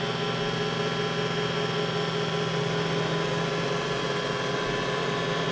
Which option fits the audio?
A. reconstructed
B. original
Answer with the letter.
B